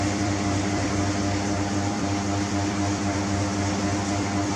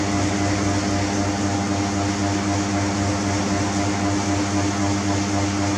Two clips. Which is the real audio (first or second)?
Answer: second